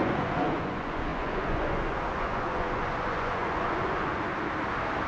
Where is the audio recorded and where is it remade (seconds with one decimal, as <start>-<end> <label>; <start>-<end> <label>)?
0.0-4.3 remade; 4.3-5.1 recorded